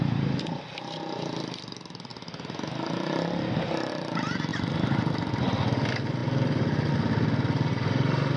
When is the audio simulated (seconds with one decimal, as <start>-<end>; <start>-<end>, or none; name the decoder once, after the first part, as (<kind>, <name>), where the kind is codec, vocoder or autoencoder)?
4.5-5.3 (vocoder, BigVGAN v2)